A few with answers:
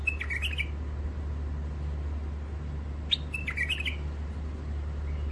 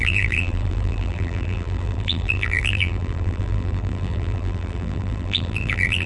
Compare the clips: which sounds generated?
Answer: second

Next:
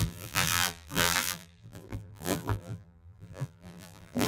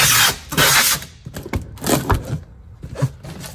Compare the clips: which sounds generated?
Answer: first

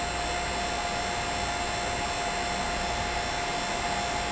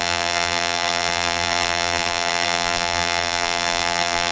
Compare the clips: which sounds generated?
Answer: second